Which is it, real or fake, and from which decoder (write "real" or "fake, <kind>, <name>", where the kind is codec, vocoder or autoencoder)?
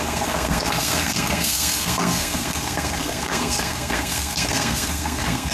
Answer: fake, codec, SNAC